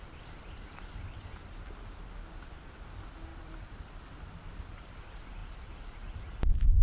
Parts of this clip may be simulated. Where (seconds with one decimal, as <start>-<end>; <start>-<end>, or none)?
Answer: 3.3-4.1; 5.4-6.2